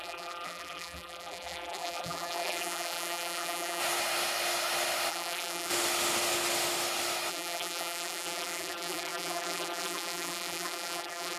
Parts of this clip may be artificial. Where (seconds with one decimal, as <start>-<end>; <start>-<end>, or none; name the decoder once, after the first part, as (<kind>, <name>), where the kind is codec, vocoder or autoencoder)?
0.0-3.8 (vocoder, BigVGAN v2); 5.1-5.7; 7.3-11.4